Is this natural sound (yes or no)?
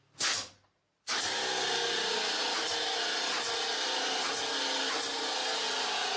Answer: yes